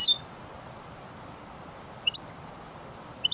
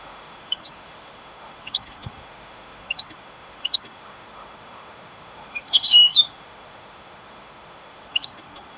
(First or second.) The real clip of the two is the first